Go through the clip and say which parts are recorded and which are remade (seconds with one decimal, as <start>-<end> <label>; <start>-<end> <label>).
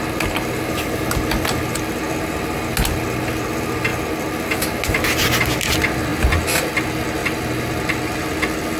0.0-8.8 recorded